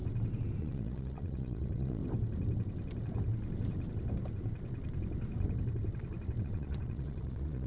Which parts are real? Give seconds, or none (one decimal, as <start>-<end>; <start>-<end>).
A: 0.0-0.6; 2.0-6.4